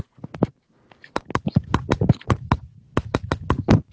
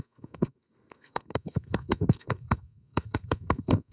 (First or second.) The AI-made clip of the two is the second